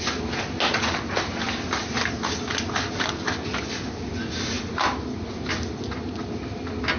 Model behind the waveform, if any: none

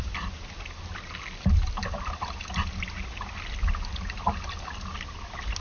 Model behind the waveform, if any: none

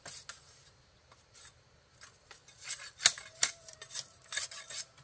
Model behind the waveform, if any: none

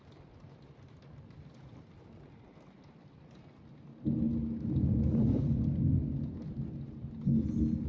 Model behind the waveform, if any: none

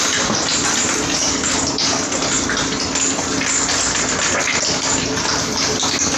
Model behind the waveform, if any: none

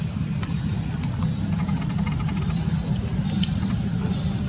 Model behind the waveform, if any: none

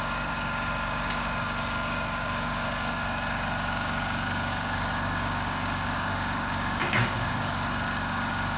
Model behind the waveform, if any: codec, DAC